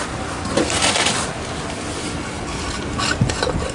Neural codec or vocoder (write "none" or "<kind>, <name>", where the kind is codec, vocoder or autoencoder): none